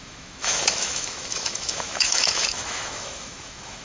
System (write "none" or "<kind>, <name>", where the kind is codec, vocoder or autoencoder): autoencoder, DAC-VAE